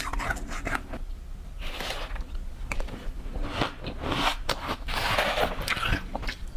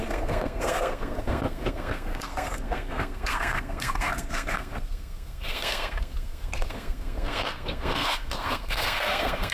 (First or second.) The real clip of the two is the first